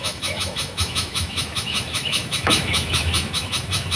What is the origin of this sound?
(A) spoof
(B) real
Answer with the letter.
A